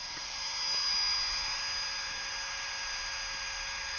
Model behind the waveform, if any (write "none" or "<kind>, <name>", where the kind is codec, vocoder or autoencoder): none